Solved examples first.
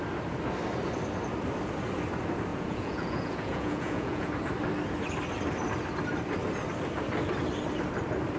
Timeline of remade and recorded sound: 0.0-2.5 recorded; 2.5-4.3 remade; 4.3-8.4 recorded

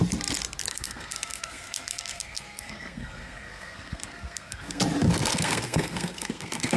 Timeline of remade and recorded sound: 0.0-0.7 recorded; 0.7-4.8 remade; 4.8-5.3 recorded; 5.3-6.8 remade